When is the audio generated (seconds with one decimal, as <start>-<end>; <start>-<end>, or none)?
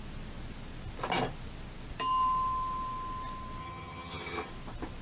3.6-4.5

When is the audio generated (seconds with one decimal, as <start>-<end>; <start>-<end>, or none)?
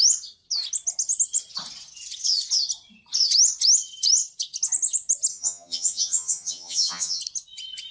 5.3-7.2